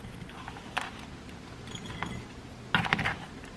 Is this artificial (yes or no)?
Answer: no